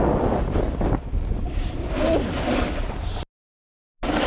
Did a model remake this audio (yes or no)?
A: no